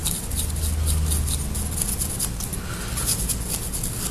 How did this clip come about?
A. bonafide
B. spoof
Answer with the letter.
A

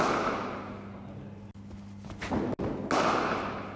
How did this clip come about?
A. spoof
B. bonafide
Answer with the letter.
B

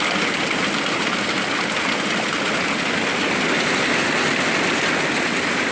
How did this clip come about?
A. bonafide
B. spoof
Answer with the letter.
A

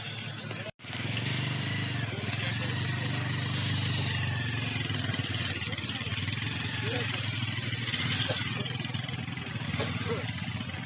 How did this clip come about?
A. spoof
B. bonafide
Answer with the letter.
B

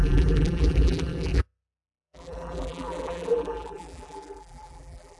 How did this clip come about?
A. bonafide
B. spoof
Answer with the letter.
B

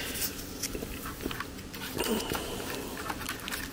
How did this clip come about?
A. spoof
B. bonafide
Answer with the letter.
B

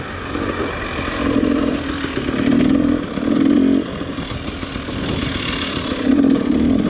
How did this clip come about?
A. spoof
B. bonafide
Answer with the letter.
B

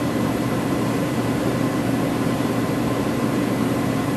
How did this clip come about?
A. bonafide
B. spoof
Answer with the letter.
B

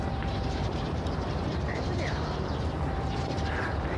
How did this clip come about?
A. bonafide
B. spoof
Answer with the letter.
B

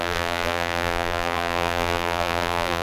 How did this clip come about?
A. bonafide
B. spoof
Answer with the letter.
B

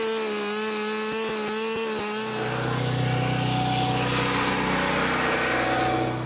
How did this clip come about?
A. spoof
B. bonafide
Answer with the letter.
B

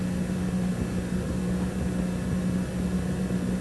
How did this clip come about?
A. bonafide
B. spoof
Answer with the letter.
A